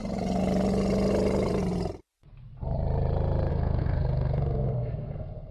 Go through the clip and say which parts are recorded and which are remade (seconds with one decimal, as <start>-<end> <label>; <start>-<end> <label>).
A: 0.0-3.5 recorded; 3.5-5.5 remade